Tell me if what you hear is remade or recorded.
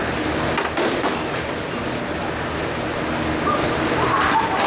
recorded